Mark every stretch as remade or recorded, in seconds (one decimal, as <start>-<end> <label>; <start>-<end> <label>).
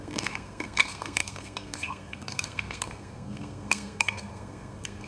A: 0.0-5.1 remade